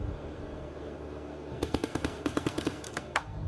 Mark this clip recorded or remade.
remade